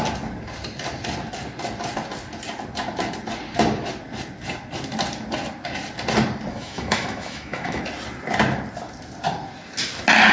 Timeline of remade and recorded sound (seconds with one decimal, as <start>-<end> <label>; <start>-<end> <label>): 0.0-6.5 recorded; 6.5-7.8 remade; 7.8-10.3 recorded